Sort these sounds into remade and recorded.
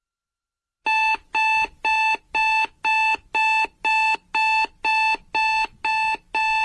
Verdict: recorded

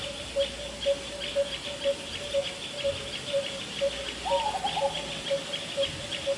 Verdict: recorded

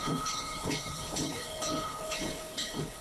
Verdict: remade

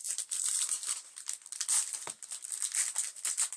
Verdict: recorded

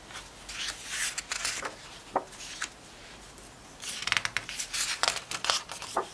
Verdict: recorded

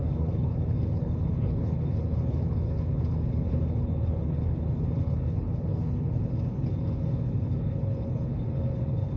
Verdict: remade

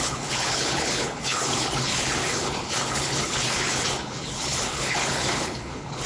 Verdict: remade